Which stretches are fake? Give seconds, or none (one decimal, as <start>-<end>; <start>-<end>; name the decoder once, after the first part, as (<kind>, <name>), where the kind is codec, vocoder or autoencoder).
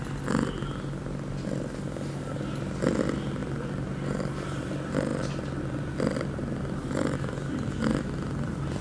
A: none